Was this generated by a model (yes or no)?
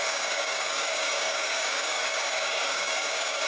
yes